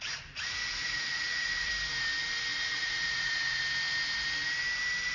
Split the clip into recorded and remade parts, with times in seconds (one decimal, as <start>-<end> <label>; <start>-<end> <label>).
0.0-1.7 remade; 1.7-2.5 recorded; 2.5-3.6 remade; 3.6-5.1 recorded